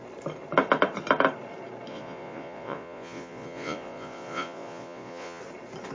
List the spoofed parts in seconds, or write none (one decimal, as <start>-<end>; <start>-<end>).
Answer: 1.9-5.4